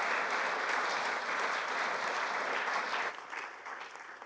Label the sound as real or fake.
fake